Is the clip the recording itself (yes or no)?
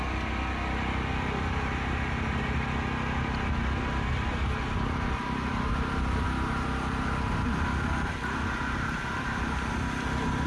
yes